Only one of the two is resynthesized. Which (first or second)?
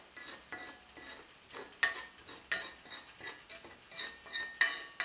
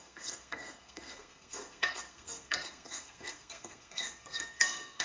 second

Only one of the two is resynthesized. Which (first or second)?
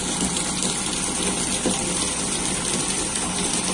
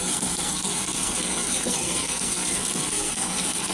second